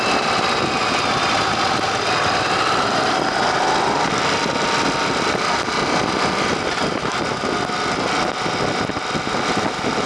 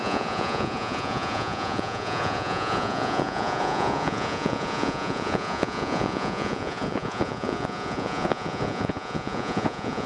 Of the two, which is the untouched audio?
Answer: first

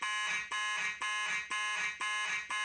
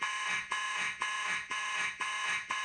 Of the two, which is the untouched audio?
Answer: first